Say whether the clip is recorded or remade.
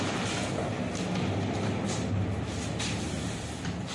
recorded